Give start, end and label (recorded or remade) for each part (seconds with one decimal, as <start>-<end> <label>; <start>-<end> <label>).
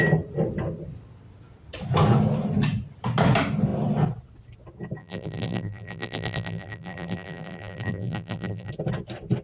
0.0-5.0 recorded; 5.0-8.7 remade; 8.7-9.4 recorded